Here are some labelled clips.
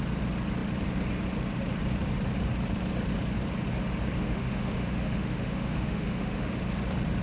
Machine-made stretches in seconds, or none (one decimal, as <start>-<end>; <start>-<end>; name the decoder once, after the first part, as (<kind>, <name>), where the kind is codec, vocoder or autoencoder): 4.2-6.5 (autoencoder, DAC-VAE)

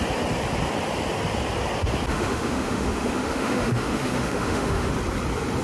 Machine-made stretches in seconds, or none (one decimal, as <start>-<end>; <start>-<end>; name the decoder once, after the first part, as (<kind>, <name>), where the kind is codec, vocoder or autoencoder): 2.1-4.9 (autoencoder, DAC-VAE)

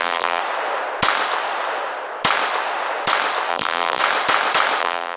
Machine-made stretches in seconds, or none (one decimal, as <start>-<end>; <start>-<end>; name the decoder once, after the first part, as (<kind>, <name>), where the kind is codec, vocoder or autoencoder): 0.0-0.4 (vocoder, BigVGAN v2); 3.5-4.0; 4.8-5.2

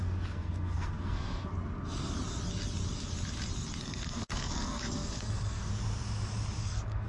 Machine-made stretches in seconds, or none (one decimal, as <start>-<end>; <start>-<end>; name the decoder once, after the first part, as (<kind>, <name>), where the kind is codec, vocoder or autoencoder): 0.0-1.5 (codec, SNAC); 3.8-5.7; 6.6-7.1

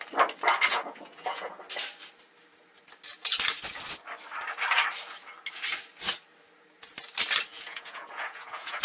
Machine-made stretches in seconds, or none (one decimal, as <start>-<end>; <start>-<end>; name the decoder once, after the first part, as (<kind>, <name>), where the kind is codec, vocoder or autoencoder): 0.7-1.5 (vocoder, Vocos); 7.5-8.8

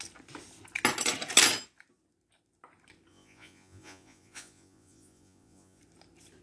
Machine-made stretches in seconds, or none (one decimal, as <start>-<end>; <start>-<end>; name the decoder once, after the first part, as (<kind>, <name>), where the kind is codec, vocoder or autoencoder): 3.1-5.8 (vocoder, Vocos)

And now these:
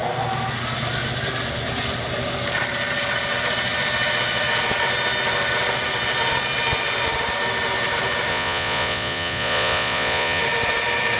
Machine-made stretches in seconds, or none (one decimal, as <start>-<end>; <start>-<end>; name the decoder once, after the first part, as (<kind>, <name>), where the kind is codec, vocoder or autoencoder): 8.3-10.4 (vocoder, Vocos)